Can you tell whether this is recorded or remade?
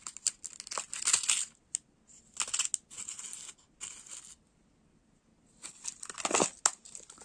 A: recorded